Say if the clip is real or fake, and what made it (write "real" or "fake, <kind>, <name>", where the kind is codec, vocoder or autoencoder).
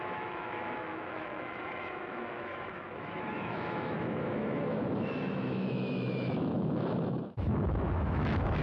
fake, autoencoder, DAC-VAE